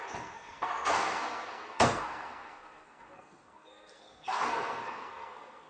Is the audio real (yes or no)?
no